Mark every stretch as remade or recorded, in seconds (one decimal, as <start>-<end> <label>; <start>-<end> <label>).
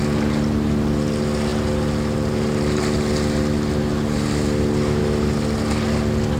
0.0-6.4 recorded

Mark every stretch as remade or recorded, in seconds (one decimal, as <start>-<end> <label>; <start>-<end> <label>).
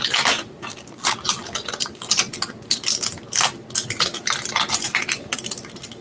0.0-6.0 recorded